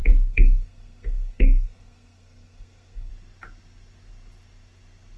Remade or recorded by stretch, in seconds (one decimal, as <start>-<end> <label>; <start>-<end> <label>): 0.0-3.1 remade; 3.1-5.2 recorded